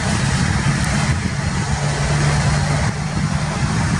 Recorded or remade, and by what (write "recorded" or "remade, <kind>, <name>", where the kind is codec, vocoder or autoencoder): recorded